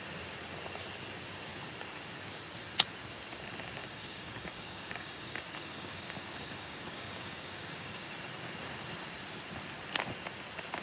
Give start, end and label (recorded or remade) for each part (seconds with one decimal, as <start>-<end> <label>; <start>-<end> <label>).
0.0-3.8 recorded; 3.8-8.1 remade; 8.1-10.8 recorded